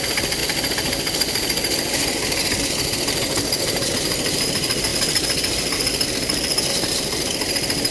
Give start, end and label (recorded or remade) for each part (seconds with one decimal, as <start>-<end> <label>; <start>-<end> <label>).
0.0-4.9 remade; 4.9-6.7 recorded; 6.7-7.9 remade